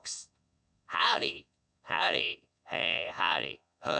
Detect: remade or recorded remade